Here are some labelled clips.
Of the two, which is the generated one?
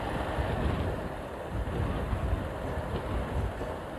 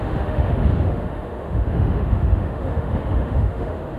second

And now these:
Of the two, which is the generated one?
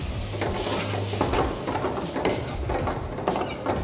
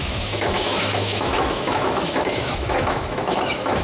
second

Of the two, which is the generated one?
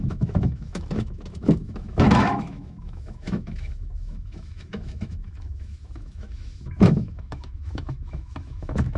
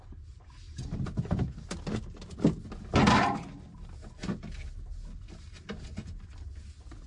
first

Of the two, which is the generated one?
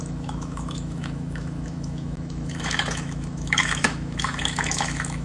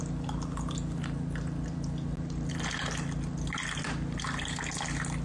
first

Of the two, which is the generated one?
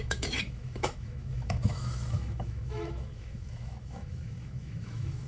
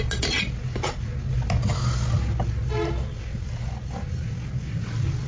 first